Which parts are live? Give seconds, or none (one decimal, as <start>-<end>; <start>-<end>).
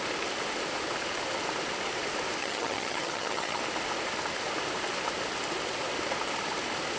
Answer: 0.0-2.4; 3.6-7.0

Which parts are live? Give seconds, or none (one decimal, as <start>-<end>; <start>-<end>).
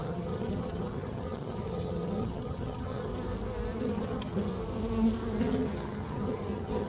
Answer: 3.1-3.8; 4.5-5.4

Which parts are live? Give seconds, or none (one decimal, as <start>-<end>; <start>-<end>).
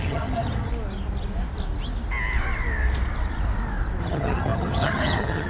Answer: 0.7-4.0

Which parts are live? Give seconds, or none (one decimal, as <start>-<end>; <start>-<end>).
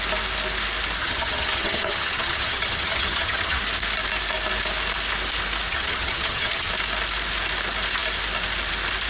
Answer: 0.0-1.0; 3.6-5.7; 6.7-9.1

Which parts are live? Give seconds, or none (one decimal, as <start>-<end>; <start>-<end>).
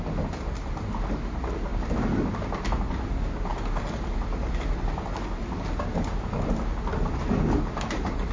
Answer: 0.0-8.3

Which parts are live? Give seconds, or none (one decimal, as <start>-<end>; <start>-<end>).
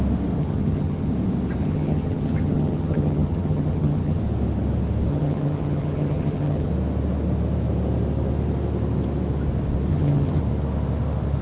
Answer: 0.0-0.4; 1.1-1.6; 4.2-5.1; 6.7-9.9; 10.4-11.4